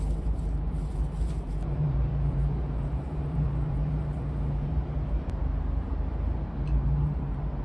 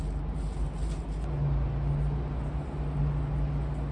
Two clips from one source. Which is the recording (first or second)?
second